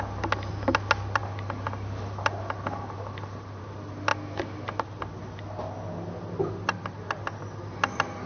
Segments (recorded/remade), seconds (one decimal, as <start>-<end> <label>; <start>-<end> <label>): 0.0-1.2 recorded; 1.2-3.6 remade; 3.6-8.3 recorded